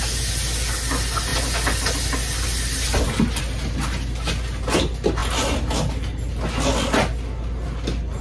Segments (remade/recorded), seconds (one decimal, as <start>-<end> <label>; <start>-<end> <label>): 0.0-8.2 recorded